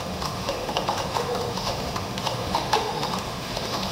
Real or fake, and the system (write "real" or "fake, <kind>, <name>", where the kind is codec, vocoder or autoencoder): fake, autoencoder, DAC-VAE